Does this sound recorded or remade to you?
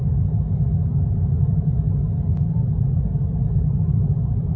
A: recorded